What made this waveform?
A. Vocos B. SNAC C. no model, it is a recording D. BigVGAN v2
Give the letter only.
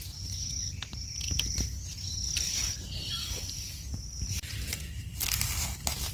D